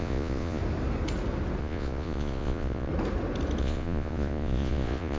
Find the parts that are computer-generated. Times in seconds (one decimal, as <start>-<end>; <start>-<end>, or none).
0.0-0.6; 1.6-2.9; 3.6-5.2